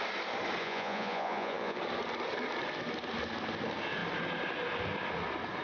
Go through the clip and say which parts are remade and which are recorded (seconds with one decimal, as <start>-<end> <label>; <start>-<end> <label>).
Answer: 0.0-0.6 recorded; 0.6-1.8 remade; 1.8-5.6 recorded